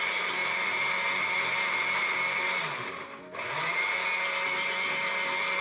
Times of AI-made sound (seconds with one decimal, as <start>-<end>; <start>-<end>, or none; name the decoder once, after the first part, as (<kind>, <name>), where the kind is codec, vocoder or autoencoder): none